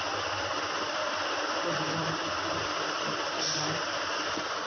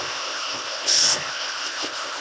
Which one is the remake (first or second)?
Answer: second